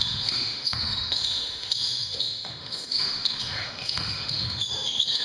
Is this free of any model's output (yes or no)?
no